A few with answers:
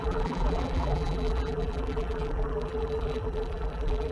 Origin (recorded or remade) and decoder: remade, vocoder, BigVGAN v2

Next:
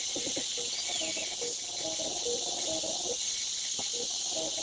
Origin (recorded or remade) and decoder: recorded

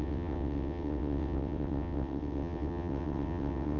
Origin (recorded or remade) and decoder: remade, vocoder, WaveNeXt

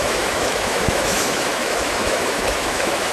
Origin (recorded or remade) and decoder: remade, autoencoder, DAC-VAE